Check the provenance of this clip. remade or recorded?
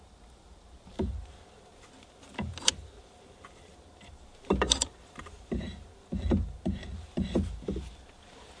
recorded